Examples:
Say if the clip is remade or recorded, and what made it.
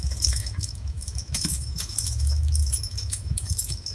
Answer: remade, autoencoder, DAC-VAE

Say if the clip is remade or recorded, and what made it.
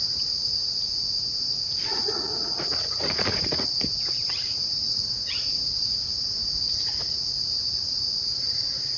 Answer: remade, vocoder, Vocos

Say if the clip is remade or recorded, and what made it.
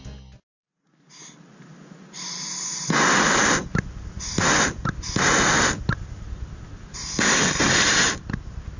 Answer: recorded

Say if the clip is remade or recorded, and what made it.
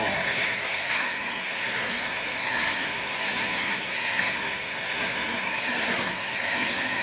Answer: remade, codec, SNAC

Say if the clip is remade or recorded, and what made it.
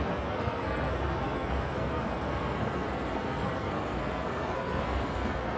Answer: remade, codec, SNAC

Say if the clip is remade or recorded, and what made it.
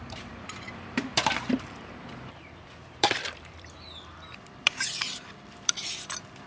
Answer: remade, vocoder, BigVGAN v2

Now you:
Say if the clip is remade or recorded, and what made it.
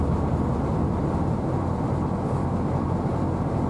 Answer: remade, vocoder, BigVGAN v2